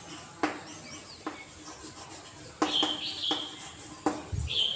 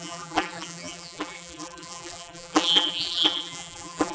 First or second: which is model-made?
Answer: second